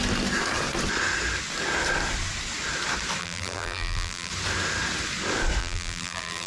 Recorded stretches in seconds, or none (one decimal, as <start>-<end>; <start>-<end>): 0.0-3.2; 4.3-5.6